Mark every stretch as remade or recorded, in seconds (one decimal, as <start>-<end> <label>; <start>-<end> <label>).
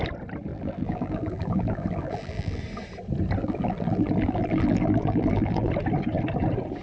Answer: 0.0-0.5 recorded; 0.5-2.6 remade; 2.6-3.4 recorded; 3.4-5.7 remade; 5.7-6.8 recorded